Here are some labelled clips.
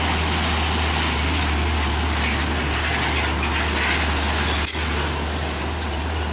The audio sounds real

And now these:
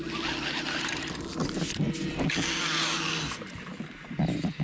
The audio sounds real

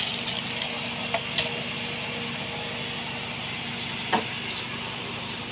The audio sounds real